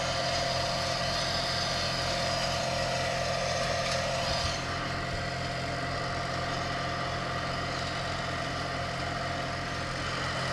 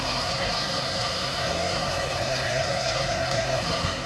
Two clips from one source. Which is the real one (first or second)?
first